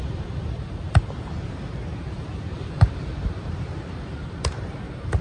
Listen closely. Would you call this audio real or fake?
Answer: fake